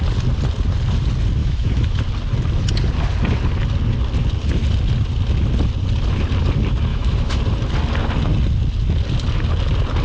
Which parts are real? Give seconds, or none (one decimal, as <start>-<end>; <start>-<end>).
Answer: 0.0-1.4; 2.0-6.9; 7.4-10.0